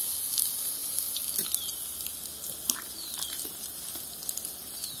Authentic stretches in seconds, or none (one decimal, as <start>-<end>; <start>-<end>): 0.0-5.0